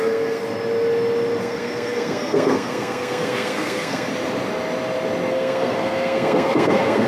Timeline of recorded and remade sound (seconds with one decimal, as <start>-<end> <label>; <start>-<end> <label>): 0.0-0.4 remade; 0.4-1.4 recorded; 1.4-4.1 remade; 4.1-5.3 recorded; 5.3-7.1 remade